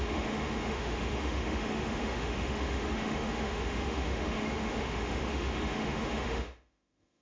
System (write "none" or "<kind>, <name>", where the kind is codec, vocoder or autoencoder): autoencoder, DAC-VAE